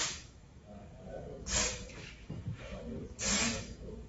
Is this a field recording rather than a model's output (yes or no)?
no